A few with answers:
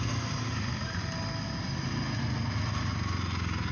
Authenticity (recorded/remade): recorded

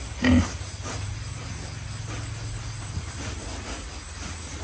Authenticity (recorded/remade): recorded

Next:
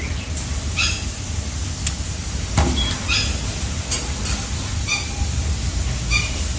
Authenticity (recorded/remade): recorded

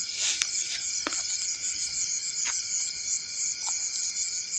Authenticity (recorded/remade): recorded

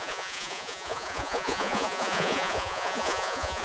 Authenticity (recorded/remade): remade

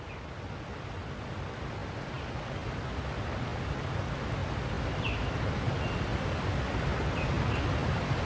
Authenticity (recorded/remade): recorded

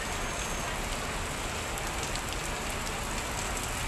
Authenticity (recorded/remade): recorded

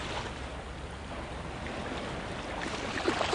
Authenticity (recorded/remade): recorded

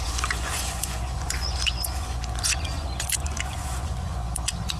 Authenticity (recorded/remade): remade